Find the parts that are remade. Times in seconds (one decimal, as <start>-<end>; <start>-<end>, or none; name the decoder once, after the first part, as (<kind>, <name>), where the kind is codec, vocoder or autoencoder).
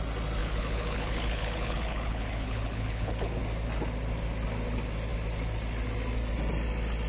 0.4-3.4 (codec, HILCodec)